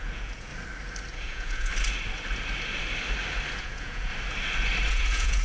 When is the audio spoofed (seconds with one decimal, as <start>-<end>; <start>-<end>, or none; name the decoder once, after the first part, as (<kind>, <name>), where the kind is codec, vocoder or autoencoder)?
0.0-0.5 (vocoder, Vocos); 1.1-1.7; 3.6-4.1; 4.9-5.4